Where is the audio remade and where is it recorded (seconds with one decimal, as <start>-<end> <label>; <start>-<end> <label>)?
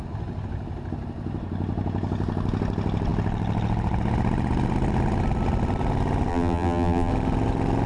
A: 0.0-6.3 recorded; 6.3-7.1 remade; 7.1-7.9 recorded